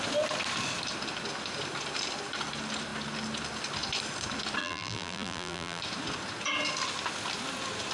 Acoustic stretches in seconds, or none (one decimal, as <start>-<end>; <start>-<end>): 0.0-4.6; 5.8-7.9